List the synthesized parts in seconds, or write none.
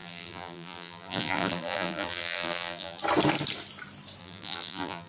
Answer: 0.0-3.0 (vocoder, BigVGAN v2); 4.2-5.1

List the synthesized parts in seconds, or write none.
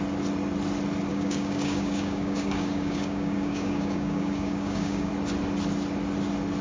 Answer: 1.1-5.1 (codec, DAC)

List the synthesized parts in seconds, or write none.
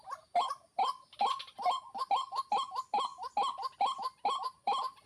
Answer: none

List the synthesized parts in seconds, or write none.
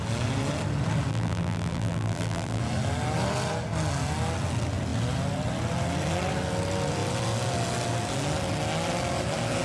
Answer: 1.1-2.6 (vocoder, BigVGAN v2)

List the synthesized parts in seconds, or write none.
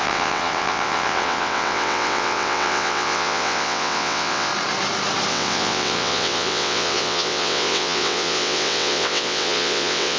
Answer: 0.0-4.5 (vocoder, WaveNeXt); 5.3-10.2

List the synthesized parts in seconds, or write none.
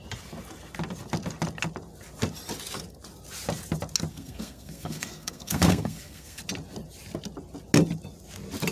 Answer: 4.1-6.4 (codec, SNAC)